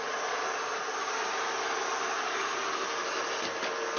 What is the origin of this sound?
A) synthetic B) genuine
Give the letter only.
B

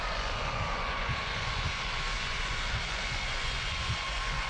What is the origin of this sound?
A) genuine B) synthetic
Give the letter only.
B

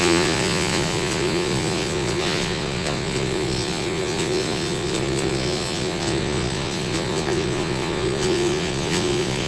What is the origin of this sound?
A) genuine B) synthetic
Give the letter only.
B